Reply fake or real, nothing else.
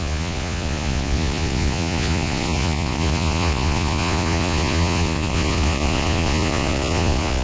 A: fake